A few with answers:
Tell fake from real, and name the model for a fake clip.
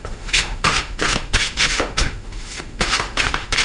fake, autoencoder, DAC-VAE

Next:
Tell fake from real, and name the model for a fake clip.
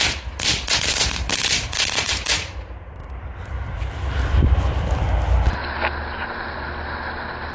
real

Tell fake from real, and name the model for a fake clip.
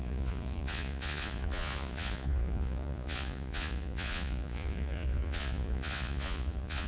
fake, vocoder, Vocos